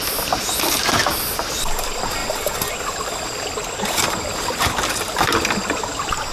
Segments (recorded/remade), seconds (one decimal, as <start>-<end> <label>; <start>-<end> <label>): 0.0-6.3 recorded